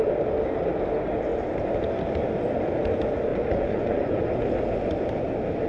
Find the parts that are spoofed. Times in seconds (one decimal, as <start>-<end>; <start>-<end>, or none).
3.3-4.2